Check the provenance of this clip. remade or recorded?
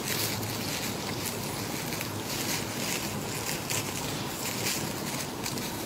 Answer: recorded